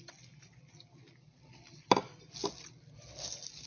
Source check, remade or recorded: recorded